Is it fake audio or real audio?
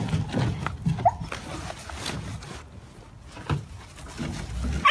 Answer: real